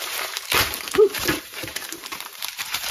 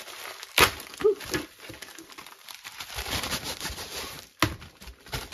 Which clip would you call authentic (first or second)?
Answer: second